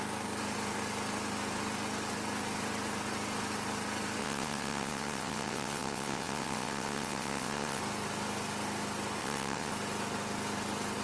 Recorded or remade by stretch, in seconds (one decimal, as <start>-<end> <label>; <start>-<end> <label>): 0.0-4.2 recorded; 4.2-7.8 remade; 7.8-9.2 recorded; 9.2-9.7 remade; 9.7-11.0 recorded